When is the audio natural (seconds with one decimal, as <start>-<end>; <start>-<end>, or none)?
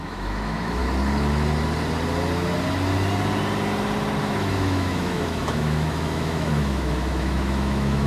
0.8-4.2